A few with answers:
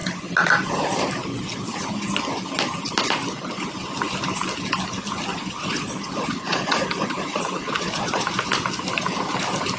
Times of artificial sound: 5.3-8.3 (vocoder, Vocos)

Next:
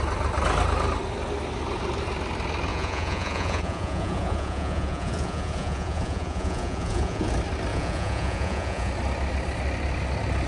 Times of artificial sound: 2.7-7.3 (vocoder, Vocos); 7.7-8.9

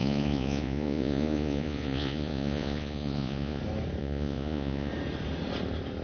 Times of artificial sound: 0.0-3.6 (vocoder, Vocos); 4.0-4.9

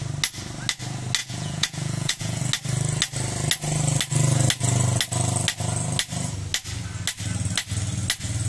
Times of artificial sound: 1.2-2.4 (vocoder, Vocos)

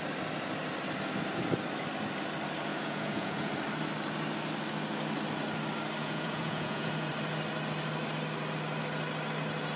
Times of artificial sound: 2.7-3.5 (vocoder, Vocos); 6.0-7.1

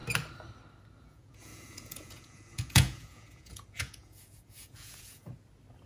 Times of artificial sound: 1.0-5.2 (vocoder, Vocos)